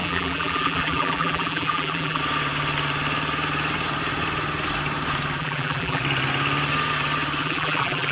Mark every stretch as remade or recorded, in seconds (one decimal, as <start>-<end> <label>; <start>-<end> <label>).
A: 0.0-2.2 remade; 2.2-5.4 recorded; 5.4-6.0 remade; 6.0-7.4 recorded; 7.4-8.1 remade